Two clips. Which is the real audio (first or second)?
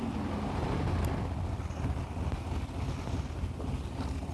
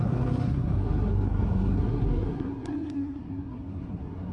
first